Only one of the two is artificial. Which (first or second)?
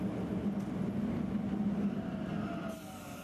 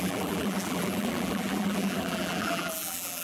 second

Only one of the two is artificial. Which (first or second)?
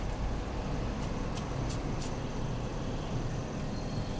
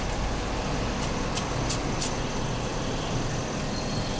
first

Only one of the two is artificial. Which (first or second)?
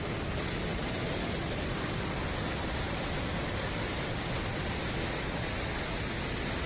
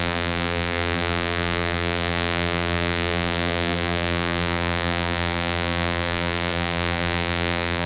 second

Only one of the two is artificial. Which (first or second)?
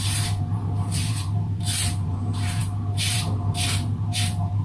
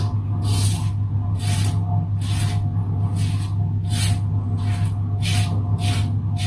first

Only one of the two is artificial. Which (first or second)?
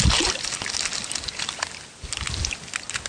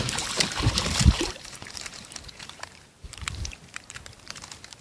second